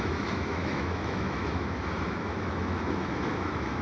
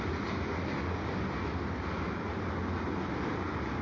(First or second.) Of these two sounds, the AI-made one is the first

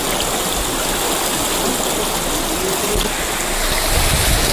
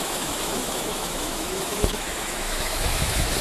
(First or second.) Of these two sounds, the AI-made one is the second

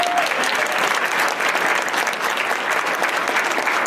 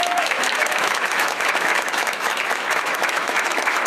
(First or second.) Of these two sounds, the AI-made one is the second